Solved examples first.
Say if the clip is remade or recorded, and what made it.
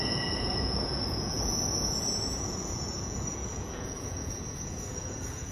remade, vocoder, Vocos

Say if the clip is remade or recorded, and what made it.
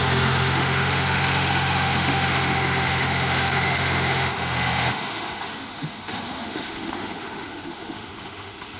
remade, autoencoder, DAC-VAE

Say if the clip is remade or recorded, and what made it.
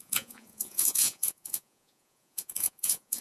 remade, vocoder, Vocos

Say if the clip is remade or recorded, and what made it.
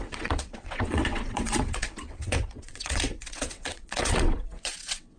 remade, vocoder, WaveNeXt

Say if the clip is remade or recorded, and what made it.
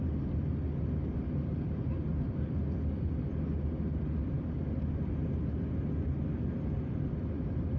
recorded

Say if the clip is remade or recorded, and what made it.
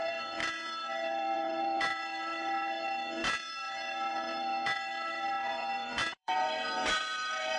remade, vocoder, BigVGAN v2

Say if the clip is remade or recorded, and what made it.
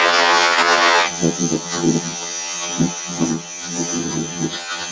remade, vocoder, HiFi-GAN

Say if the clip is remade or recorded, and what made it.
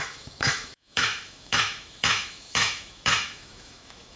remade, autoencoder, DAC-VAE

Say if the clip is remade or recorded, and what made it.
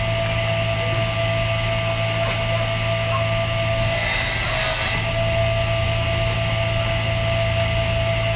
recorded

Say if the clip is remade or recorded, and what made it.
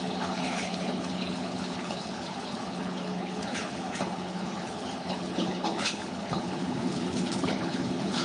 remade, codec, HILCodec